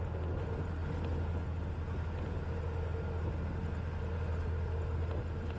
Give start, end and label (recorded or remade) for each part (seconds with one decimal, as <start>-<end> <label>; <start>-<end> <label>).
0.0-5.6 recorded